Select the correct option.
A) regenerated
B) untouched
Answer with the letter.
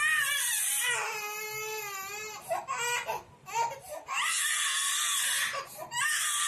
B